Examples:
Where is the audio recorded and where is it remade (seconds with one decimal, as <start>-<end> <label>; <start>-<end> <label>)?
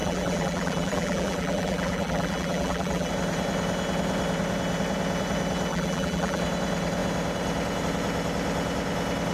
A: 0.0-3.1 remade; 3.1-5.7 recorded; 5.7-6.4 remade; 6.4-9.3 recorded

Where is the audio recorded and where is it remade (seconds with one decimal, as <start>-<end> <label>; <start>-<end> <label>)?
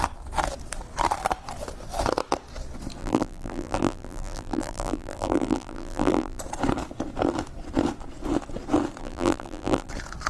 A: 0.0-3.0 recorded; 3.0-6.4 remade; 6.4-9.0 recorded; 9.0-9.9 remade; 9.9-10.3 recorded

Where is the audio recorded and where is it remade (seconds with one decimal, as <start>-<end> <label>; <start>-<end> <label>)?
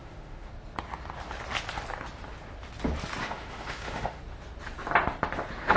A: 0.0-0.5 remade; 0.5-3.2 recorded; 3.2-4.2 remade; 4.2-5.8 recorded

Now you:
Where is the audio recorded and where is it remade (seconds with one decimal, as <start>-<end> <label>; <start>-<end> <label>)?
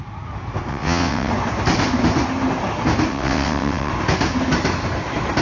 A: 0.0-0.7 recorded; 0.7-1.3 remade; 1.3-3.1 recorded; 3.1-3.9 remade; 3.9-5.4 recorded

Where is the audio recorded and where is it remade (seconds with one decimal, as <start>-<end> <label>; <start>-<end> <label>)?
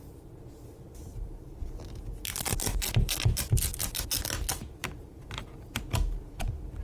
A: 0.0-1.1 recorded; 1.1-1.9 remade; 1.9-4.8 recorded; 4.8-5.8 remade; 5.8-6.8 recorded